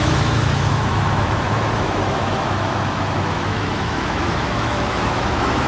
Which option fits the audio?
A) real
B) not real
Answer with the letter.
B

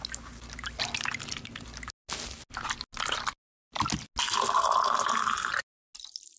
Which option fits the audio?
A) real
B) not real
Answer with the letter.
A